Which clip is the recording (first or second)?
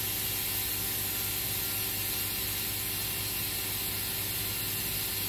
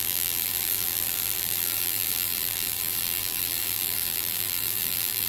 first